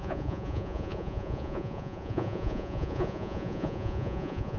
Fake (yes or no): yes